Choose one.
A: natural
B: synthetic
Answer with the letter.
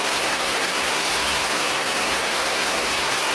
B